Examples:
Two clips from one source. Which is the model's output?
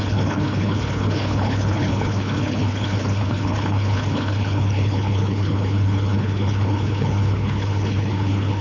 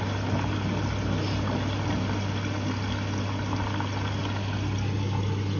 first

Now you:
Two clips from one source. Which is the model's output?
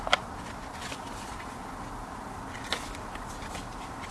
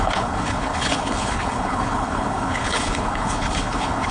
second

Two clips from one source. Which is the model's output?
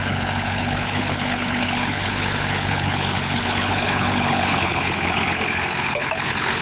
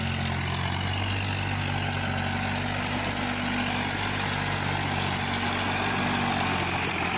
first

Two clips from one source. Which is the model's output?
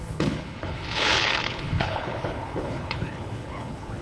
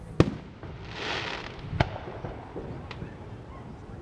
first